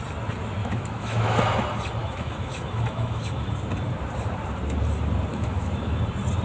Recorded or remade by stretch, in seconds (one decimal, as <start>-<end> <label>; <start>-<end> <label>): 0.0-0.6 recorded; 0.6-1.4 remade; 1.4-2.0 recorded; 2.0-3.5 remade; 3.5-5.3 recorded; 5.3-6.0 remade; 6.0-6.4 recorded